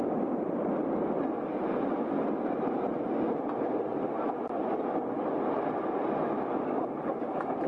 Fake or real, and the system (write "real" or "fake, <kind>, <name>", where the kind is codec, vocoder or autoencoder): real